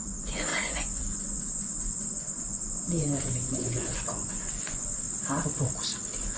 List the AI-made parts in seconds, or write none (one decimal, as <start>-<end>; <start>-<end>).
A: 0.0-5.0